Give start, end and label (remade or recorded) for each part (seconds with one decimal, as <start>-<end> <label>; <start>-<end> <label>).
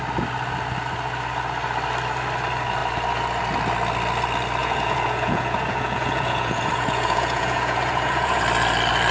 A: 0.0-4.6 recorded; 4.6-8.4 remade; 8.4-9.1 recorded